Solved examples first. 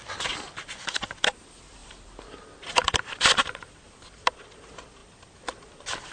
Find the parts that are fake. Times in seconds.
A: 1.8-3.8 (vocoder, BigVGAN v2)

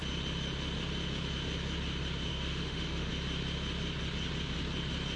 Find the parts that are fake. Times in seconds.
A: 2.3-3.1 (autoencoder, DAC-VAE)

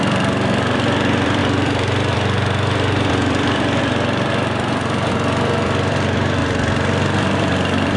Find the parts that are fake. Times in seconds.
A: 0.0-8.0 (vocoder, BigVGAN v2)